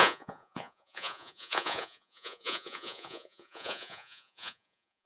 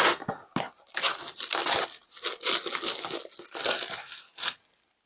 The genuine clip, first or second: second